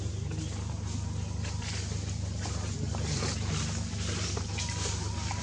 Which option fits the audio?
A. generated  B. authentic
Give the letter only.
B